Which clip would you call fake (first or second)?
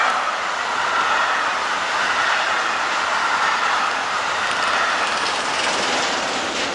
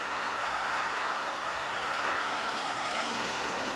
second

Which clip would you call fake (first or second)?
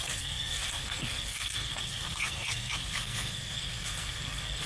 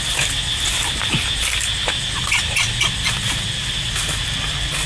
first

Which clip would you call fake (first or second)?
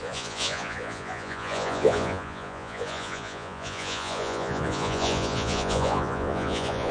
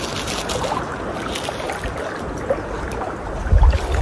first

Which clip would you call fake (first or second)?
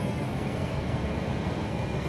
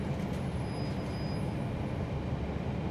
first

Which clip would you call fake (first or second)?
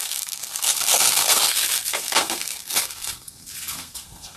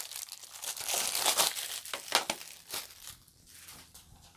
first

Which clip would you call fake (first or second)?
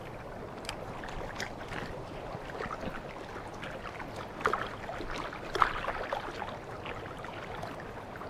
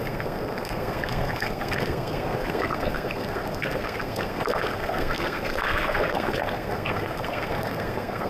second